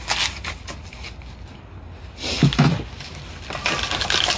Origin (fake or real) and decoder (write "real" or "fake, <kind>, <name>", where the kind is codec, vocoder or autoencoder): real